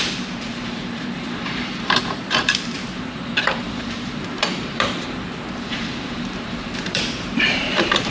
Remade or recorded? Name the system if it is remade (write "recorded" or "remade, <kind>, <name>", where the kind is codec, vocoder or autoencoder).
remade, vocoder, BigVGAN v2